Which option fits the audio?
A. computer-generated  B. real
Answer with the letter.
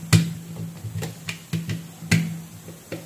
B